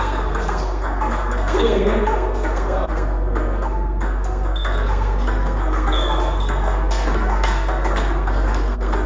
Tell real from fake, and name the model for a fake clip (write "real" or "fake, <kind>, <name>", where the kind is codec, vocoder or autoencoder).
fake, codec, SNAC